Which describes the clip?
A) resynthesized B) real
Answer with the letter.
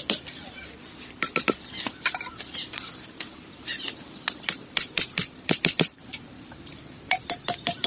A